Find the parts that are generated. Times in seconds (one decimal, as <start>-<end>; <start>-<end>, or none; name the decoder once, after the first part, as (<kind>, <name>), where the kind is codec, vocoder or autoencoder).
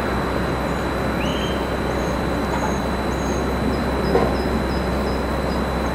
none